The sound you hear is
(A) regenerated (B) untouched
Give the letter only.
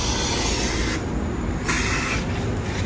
B